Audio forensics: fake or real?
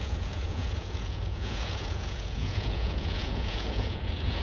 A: fake